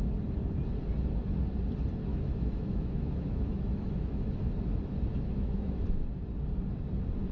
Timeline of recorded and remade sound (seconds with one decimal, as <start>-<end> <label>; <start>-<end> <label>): 0.0-2.1 recorded; 2.1-4.4 remade; 4.4-5.1 recorded; 5.1-6.1 remade; 6.1-7.3 recorded